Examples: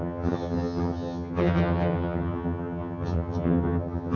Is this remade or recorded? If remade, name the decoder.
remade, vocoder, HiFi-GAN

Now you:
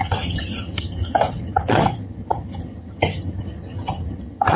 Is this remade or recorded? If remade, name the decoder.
remade, vocoder, HiFi-GAN